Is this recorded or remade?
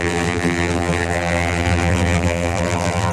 remade